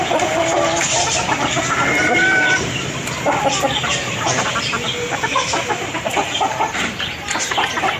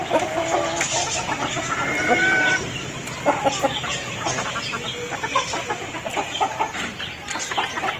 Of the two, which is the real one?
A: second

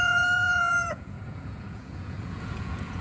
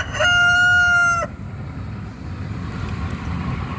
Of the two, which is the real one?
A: second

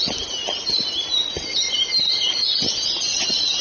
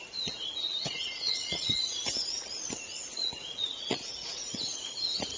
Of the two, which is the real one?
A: first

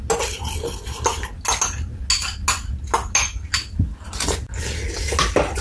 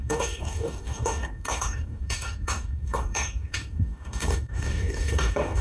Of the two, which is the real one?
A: first